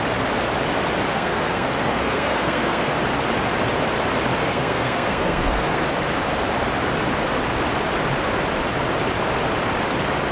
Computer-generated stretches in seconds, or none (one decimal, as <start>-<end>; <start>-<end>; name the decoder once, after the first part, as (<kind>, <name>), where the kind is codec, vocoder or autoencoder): 1.1-2.9 (codec, SNAC); 4.4-5.9